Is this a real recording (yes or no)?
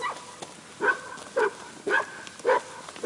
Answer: yes